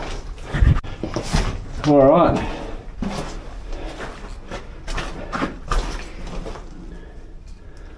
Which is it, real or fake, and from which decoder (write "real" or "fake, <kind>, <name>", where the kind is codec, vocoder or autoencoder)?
real